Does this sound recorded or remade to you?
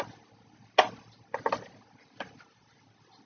recorded